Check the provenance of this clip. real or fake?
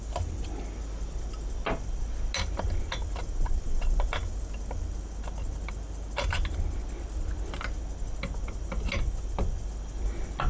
real